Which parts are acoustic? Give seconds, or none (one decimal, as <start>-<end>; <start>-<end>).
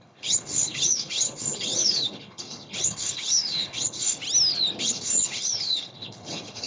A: 4.2-4.8